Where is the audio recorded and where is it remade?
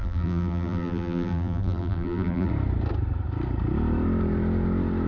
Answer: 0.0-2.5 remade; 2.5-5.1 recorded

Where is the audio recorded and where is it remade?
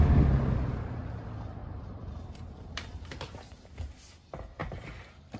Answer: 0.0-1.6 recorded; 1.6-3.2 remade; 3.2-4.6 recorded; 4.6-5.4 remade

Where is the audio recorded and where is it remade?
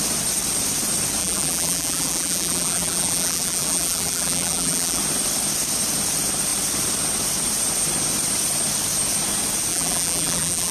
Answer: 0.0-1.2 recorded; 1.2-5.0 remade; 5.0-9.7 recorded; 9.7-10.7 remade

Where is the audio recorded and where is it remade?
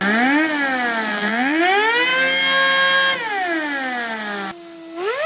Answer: 0.0-1.1 recorded; 1.1-1.6 remade; 1.6-5.3 recorded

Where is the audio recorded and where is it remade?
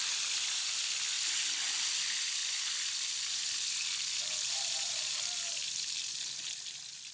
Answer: 0.0-7.1 remade